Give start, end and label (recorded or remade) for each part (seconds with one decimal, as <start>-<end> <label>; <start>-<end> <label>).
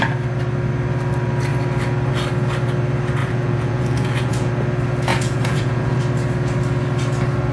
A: 0.0-3.2 recorded; 3.2-4.5 remade; 4.5-5.1 recorded; 5.1-6.0 remade; 6.0-7.5 recorded